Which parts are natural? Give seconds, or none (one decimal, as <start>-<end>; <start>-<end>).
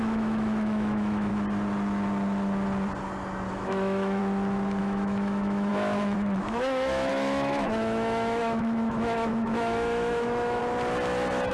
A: 1.3-3.5; 4.2-4.8; 10.6-11.5